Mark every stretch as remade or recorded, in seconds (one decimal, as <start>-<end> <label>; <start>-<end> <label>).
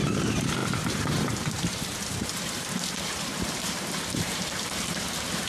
0.0-5.5 remade